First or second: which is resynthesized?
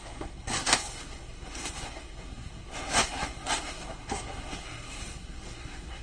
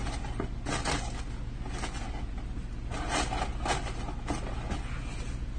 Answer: first